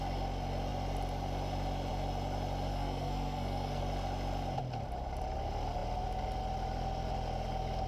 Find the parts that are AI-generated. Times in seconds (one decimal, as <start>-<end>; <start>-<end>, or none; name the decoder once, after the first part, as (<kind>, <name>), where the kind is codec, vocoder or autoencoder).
2.7-3.8 (codec, SNAC)